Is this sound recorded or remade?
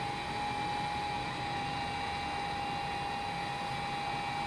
recorded